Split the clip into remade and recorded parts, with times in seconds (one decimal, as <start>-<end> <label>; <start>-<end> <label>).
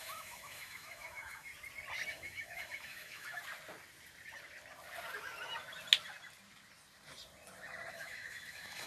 0.0-1.5 remade; 1.5-2.1 recorded; 2.1-3.4 remade; 3.4-7.9 recorded; 7.9-8.9 remade